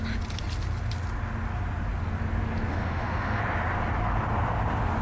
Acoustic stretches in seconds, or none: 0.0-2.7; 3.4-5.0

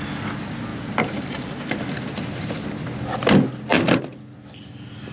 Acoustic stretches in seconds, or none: 0.0-0.7; 1.9-5.1